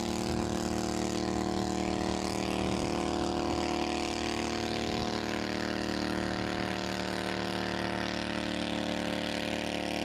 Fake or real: real